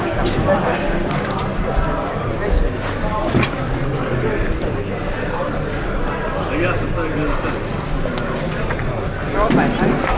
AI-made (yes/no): yes